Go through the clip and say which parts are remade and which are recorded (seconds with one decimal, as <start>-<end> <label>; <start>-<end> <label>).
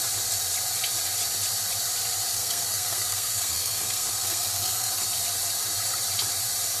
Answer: 0.0-2.3 recorded; 2.3-4.9 remade; 4.9-6.8 recorded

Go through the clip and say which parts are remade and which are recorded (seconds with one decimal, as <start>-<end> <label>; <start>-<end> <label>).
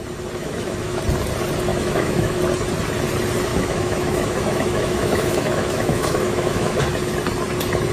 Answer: 0.0-0.4 recorded; 0.4-1.0 remade; 1.0-1.7 recorded; 1.7-2.4 remade; 2.4-3.5 recorded; 3.5-6.8 remade; 6.8-7.9 recorded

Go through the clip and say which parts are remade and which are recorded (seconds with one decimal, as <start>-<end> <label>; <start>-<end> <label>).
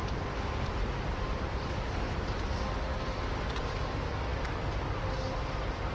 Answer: 0.0-5.9 recorded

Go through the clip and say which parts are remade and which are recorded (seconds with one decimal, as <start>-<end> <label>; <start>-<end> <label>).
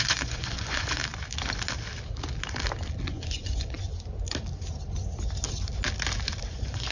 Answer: 0.0-1.0 remade; 1.0-3.1 recorded; 3.1-3.9 remade; 3.9-6.5 recorded; 6.5-6.9 remade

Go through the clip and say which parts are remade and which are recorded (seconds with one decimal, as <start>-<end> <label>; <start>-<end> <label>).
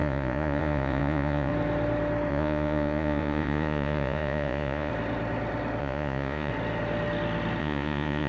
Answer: 0.0-1.5 remade; 1.5-2.3 recorded; 2.3-4.9 remade; 4.9-5.8 recorded; 5.8-6.5 remade; 6.5-7.6 recorded; 7.6-8.3 remade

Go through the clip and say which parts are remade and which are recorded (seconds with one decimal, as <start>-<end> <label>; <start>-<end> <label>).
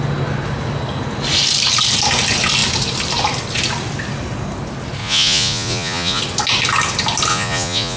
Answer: 0.0-5.0 recorded; 5.0-6.2 remade; 6.2-7.3 recorded; 7.3-8.0 remade